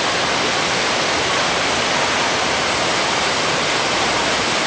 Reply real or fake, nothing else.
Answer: real